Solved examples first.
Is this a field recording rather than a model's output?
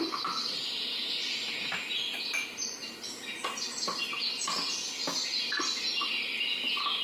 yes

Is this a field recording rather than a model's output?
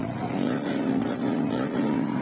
no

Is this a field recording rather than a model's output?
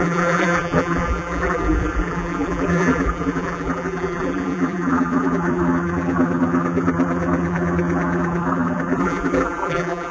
no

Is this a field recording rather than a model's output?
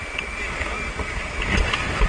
yes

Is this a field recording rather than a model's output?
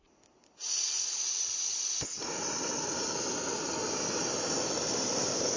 yes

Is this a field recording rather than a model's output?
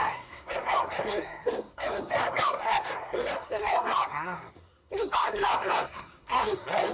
no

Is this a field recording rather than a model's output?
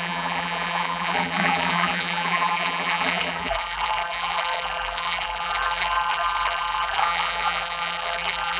no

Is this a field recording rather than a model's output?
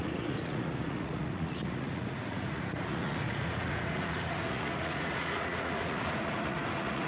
no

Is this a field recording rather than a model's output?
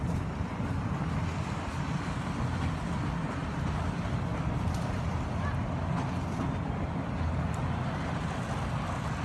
yes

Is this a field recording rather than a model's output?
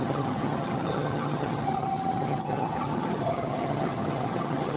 no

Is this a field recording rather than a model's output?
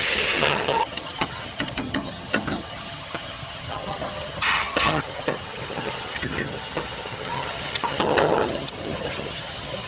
no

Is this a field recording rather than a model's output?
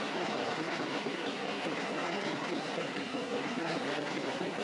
no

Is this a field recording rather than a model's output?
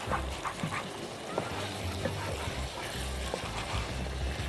yes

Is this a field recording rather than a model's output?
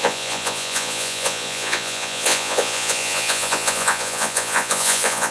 no